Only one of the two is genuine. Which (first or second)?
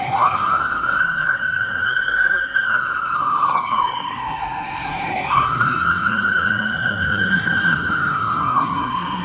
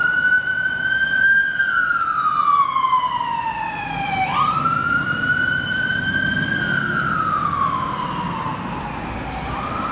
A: second